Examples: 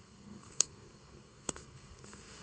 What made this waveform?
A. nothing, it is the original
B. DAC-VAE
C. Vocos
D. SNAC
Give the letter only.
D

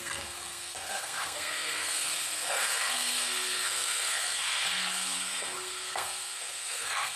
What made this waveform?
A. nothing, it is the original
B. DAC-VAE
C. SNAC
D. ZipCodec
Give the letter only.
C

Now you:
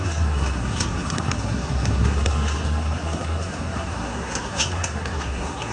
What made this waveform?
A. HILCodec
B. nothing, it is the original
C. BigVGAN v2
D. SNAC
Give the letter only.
D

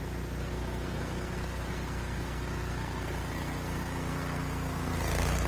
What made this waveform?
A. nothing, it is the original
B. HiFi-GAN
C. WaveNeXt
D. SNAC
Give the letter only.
D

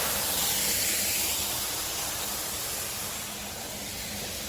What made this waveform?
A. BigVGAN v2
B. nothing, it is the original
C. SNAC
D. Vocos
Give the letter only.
B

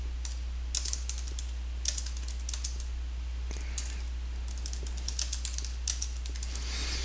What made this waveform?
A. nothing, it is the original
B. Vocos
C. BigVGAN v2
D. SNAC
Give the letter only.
A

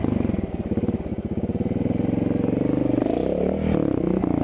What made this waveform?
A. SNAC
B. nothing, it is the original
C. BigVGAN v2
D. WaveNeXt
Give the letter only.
B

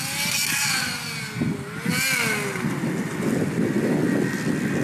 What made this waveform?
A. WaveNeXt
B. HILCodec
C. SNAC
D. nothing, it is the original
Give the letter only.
D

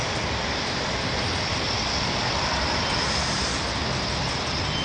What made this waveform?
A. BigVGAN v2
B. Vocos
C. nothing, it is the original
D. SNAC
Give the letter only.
C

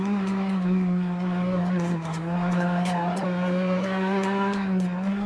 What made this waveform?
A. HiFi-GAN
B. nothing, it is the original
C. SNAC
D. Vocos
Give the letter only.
C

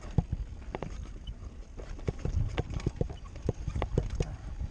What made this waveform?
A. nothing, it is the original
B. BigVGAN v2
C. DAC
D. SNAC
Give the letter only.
A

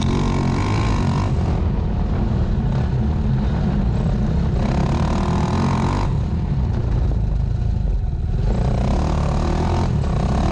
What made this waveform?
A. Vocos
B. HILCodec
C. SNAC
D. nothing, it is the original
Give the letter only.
D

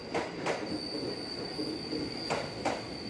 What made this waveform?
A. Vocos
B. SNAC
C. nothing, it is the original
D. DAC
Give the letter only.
C